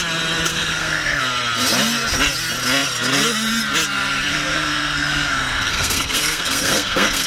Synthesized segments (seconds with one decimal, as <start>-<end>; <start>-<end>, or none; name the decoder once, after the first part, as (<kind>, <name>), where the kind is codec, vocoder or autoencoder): 0.5-1.2 (codec, SNAC); 4.3-7.3